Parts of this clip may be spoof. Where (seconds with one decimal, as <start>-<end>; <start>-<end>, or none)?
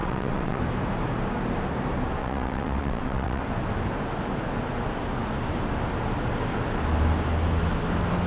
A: 0.0-0.6; 2.2-3.4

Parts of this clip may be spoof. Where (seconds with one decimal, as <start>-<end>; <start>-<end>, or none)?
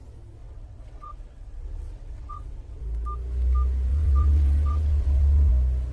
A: 0.4-2.8; 3.9-5.5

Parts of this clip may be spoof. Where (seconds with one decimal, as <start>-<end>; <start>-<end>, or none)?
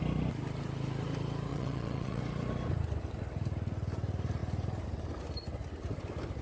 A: 1.5-2.2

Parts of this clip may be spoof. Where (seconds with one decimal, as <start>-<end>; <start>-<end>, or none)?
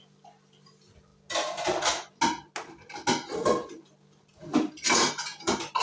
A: none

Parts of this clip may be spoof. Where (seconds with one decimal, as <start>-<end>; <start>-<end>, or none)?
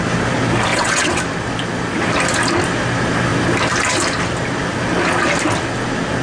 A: 0.7-1.2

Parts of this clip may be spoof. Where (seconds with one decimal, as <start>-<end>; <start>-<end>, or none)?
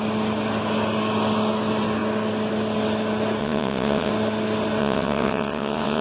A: 3.4-4.1; 4.8-6.0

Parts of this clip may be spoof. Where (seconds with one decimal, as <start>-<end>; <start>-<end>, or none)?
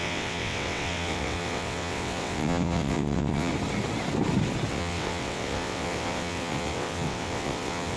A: 0.0-3.5; 4.7-8.0